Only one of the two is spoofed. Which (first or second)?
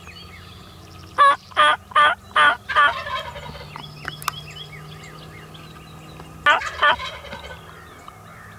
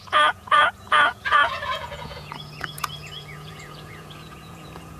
second